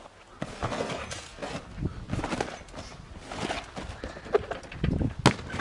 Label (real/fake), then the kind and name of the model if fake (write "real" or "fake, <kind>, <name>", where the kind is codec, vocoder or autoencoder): real